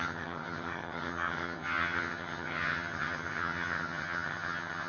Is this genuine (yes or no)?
no